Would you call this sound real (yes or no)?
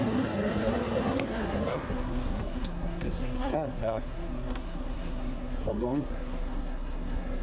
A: no